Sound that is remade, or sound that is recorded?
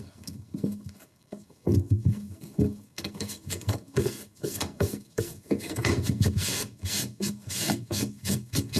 remade